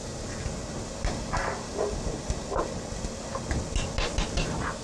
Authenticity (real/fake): real